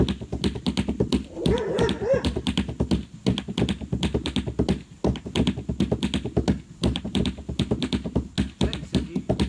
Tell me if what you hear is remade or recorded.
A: recorded